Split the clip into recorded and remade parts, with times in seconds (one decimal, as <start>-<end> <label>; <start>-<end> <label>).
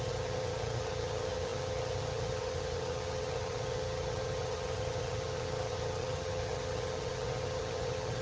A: 0.0-8.2 remade